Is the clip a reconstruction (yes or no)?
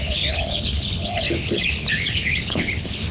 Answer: yes